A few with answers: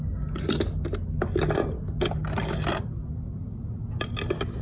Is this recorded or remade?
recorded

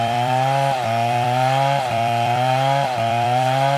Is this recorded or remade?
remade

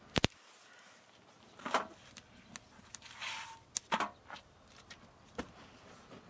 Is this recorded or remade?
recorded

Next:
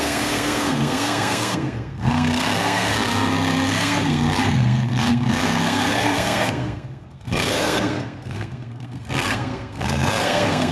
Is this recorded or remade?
remade